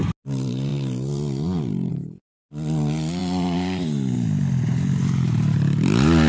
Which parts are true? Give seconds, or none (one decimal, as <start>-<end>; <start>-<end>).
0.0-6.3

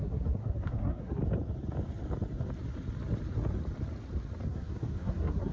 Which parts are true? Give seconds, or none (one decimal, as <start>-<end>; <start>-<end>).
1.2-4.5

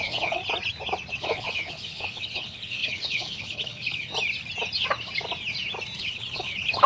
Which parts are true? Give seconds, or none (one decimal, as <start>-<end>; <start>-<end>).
0.4-1.1; 4.1-6.0

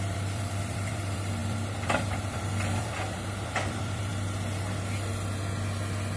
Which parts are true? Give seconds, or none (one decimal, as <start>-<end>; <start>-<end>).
4.1-6.2